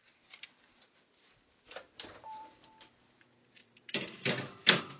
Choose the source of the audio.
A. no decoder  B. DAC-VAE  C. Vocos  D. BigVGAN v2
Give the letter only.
D